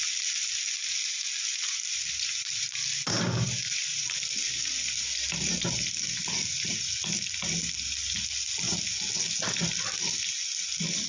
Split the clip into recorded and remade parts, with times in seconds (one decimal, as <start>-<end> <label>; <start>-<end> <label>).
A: 0.0-1.4 recorded; 1.4-5.9 remade; 5.9-11.1 recorded